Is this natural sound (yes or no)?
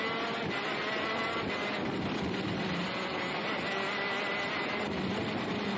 yes